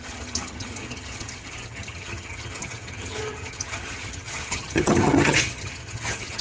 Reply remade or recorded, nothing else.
remade